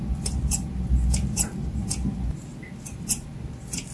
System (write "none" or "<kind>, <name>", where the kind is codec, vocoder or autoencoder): none